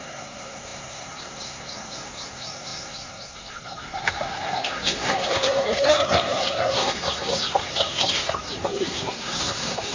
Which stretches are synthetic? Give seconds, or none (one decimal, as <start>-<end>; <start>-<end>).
0.0-9.9